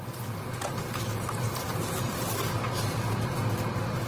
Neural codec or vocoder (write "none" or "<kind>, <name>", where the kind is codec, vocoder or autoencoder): none